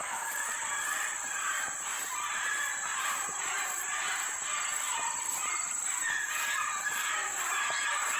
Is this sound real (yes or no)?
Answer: no